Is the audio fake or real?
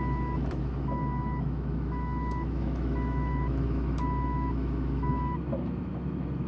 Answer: fake